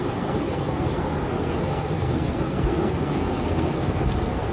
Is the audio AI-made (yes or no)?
yes